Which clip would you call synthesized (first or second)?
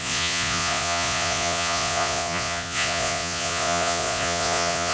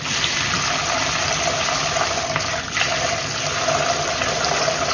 first